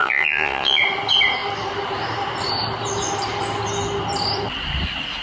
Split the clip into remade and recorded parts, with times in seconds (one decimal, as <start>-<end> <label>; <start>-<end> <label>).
0.0-0.8 remade; 0.8-5.2 recorded